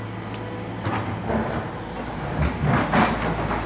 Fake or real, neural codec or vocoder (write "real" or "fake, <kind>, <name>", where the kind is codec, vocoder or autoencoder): real